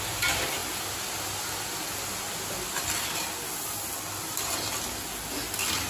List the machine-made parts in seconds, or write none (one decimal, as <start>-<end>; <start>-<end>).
none